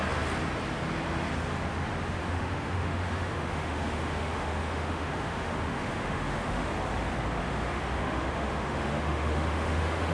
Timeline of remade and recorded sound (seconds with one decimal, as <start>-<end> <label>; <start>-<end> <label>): 0.0-2.2 recorded; 2.2-6.7 remade; 6.7-7.4 recorded; 7.4-10.1 remade